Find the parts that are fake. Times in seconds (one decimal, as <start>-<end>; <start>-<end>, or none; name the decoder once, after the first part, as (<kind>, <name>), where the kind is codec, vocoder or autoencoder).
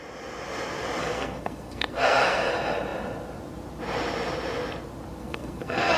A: 1.0-2.5 (codec, SNAC); 5.2-6.0